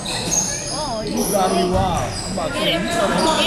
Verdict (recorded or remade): recorded